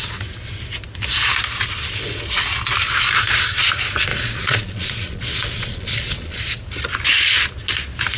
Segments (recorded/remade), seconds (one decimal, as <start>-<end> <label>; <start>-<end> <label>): 0.0-4.1 recorded; 4.1-6.4 remade; 6.4-8.2 recorded